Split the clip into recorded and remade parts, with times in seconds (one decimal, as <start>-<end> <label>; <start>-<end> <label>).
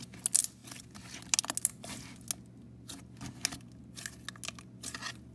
0.0-5.3 recorded